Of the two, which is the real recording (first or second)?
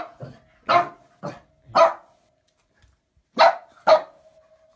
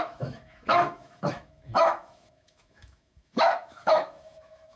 first